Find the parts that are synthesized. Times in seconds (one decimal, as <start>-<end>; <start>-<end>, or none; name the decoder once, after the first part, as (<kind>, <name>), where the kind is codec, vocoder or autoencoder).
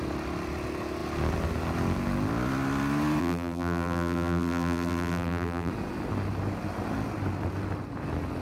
3.2-5.7 (vocoder, BigVGAN v2)